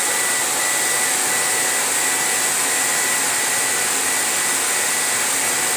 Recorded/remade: recorded